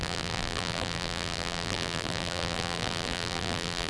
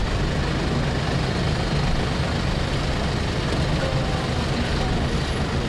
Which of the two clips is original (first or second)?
second